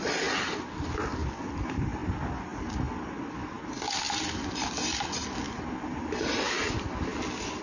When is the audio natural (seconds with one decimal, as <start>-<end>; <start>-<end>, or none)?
2.0-5.8